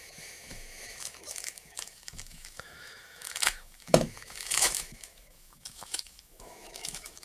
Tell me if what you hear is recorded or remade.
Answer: remade